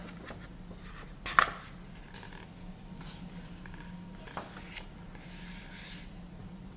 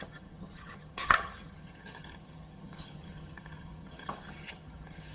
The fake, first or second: second